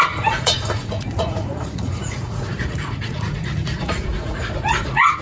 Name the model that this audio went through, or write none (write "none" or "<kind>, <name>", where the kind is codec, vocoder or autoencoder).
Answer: vocoder, Vocos